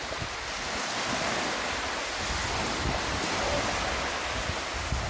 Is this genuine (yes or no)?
yes